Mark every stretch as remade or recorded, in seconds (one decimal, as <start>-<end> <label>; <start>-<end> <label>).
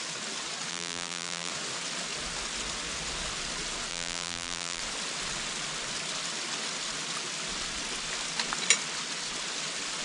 0.0-0.7 recorded; 0.7-1.5 remade; 1.5-3.9 recorded; 3.9-4.8 remade; 4.8-10.0 recorded